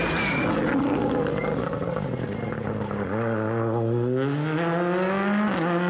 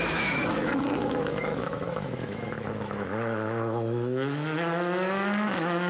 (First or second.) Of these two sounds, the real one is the first